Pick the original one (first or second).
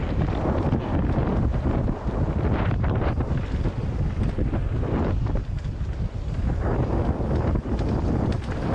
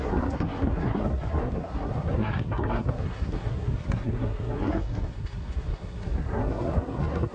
first